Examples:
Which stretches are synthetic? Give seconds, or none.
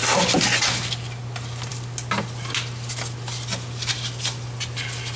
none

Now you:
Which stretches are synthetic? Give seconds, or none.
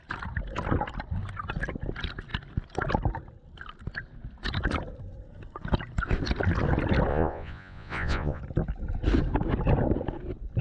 7.1-8.4 (vocoder, Vocos)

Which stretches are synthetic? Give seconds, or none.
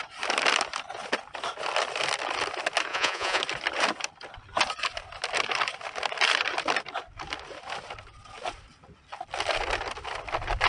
2.9-3.4 (vocoder, Vocos)